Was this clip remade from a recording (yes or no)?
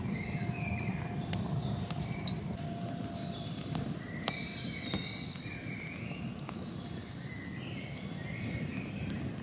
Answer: yes